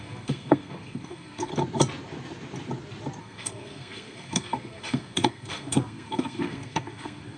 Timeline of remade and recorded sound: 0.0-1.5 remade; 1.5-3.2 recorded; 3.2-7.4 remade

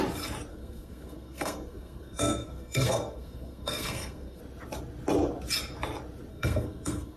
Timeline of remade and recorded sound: 0.0-0.5 recorded; 0.5-4.4 remade; 4.4-6.3 recorded; 6.3-7.2 remade

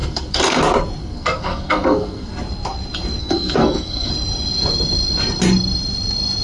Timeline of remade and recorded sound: 0.0-0.6 remade; 0.6-1.0 recorded; 1.0-2.3 remade; 2.3-3.2 recorded; 3.2-4.1 remade; 4.1-6.4 recorded

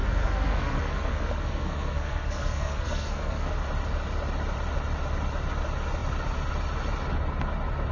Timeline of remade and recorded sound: 0.0-3.5 remade; 3.5-7.9 recorded

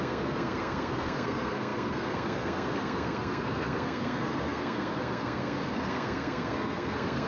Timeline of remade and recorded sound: 0.0-7.3 remade

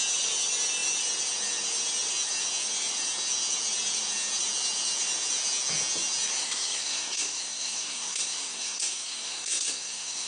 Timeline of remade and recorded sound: 0.0-6.4 recorded; 6.4-10.3 remade